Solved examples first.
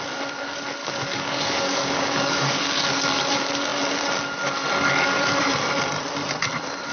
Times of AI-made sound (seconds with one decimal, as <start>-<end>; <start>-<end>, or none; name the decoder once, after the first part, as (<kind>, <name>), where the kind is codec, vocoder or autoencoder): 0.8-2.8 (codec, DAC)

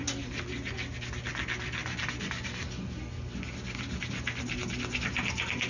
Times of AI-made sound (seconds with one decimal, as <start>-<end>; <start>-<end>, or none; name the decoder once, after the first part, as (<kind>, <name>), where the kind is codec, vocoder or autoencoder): none

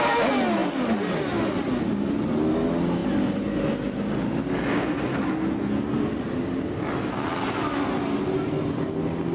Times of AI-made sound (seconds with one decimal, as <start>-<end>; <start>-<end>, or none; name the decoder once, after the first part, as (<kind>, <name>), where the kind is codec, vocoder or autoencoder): none